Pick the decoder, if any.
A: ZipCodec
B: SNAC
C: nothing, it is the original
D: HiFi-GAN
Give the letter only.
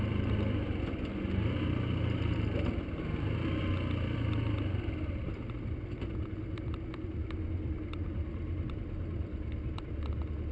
C